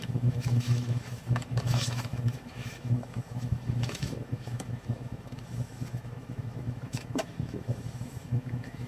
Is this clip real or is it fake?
fake